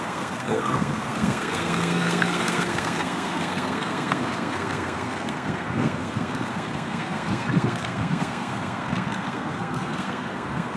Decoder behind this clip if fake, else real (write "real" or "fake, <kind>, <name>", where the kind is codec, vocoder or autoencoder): fake, codec, SNAC